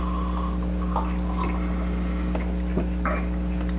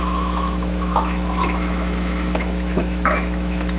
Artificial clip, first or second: second